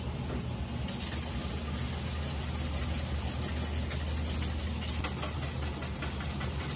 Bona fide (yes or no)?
yes